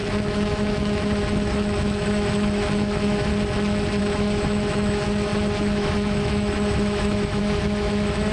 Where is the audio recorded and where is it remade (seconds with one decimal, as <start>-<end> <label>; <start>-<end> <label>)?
0.0-3.3 remade; 3.3-4.0 recorded; 4.0-8.3 remade